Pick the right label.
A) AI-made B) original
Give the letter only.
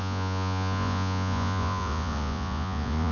A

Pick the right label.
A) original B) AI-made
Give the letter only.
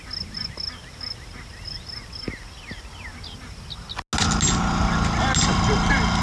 A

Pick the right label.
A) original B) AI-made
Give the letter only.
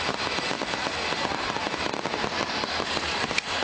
A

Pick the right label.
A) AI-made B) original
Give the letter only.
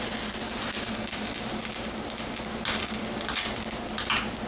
B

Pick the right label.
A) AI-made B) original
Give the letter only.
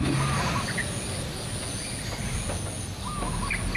B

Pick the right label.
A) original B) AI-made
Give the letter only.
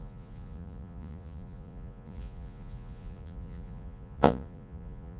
B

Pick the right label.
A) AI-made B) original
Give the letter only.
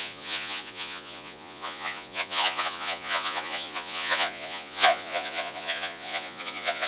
A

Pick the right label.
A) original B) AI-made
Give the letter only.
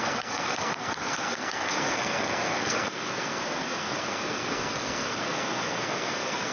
B